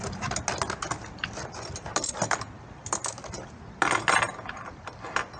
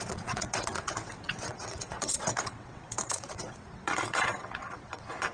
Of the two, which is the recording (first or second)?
first